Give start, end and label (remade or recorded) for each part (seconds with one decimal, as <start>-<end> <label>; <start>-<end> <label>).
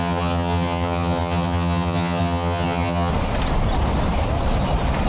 0.0-3.1 remade; 3.1-5.1 recorded